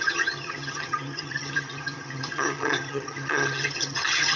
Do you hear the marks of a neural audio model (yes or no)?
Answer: yes